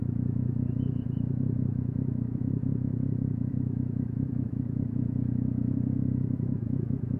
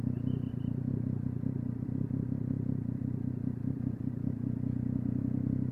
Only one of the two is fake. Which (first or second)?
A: first